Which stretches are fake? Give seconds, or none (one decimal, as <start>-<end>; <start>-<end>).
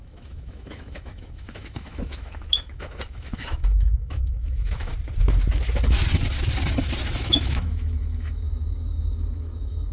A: 0.0-4.9; 7.2-9.9